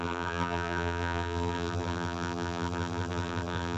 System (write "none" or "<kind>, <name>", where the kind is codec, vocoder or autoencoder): vocoder, BigVGAN v2